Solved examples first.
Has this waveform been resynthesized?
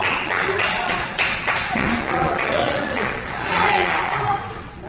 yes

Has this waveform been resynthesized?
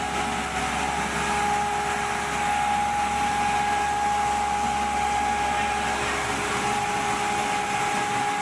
no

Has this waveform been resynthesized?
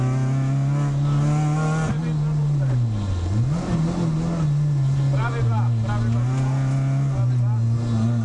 no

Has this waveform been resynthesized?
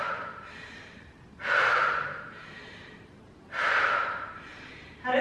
yes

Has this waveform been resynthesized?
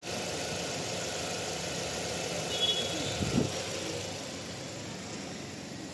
no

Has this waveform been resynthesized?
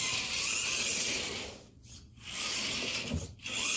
no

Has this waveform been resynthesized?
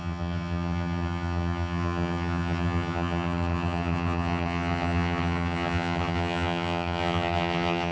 yes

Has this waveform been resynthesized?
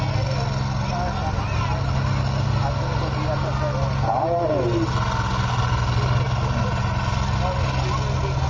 no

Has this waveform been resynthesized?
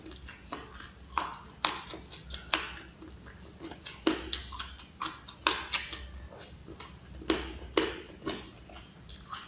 no